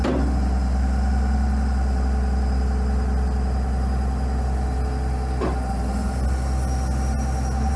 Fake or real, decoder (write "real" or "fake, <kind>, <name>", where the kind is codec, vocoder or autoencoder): real